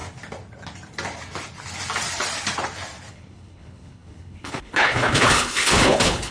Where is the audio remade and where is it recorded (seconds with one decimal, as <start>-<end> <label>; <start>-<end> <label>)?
0.0-3.1 recorded; 3.1-6.3 remade